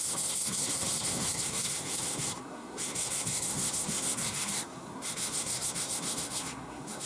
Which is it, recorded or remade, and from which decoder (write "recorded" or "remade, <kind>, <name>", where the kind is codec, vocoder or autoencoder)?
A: remade, codec, SNAC